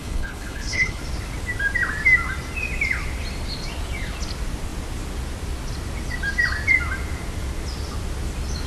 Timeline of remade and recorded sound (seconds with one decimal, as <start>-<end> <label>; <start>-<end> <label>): 0.0-1.0 remade; 1.0-8.7 recorded